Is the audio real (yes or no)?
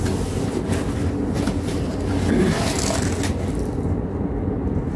yes